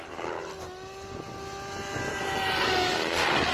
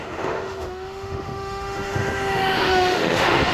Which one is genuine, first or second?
first